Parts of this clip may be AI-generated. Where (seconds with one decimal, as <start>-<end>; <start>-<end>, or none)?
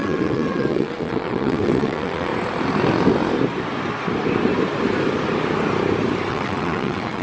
0.0-2.3; 6.3-7.2